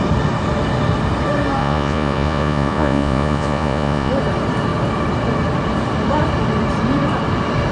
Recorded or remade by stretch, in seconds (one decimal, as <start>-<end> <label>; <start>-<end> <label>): 0.0-1.6 recorded; 1.6-4.1 remade; 4.1-7.7 recorded